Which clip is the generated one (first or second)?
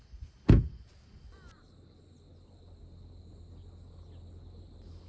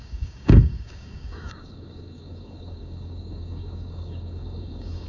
second